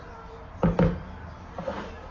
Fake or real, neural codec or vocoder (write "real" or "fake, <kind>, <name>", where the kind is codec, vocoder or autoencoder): real